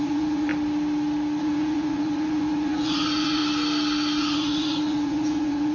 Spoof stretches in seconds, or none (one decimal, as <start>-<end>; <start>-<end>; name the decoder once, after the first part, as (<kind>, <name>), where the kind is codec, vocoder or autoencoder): 0.0-0.5 (vocoder, Vocos); 1.4-3.4; 4.2-5.7